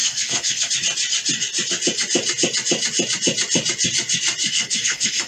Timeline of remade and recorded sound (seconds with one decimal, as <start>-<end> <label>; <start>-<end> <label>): 0.0-0.7 remade; 0.7-4.4 recorded; 4.4-5.3 remade